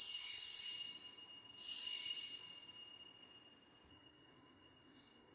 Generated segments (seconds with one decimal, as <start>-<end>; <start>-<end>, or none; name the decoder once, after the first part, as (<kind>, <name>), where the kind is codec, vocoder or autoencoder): 0.0-0.7 (codec, SNAC); 3.9-5.3